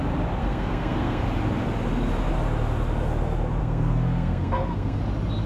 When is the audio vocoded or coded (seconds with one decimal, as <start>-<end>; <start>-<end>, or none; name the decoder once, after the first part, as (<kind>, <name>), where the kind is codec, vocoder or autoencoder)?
0.4-1.2 (codec, SNAC); 3.6-5.0